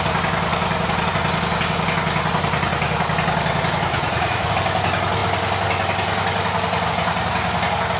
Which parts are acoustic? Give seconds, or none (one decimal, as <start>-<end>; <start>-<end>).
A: 0.0-3.9; 4.5-8.0